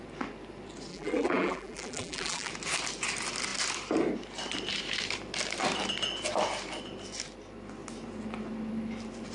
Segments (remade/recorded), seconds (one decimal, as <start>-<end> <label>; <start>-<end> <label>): 0.0-0.9 recorded; 0.9-2.5 remade; 2.5-9.3 recorded